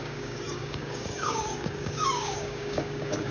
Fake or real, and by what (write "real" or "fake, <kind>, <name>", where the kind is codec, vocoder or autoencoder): fake, codec, DAC